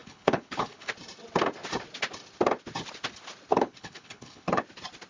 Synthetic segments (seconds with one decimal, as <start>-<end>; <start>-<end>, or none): 0.0-0.9; 3.5-4.6